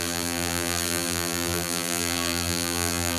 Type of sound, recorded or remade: remade